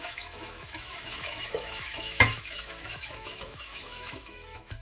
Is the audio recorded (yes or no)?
no